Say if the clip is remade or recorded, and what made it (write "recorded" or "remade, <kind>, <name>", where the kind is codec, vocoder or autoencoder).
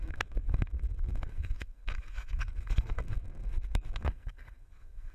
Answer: remade, codec, SNAC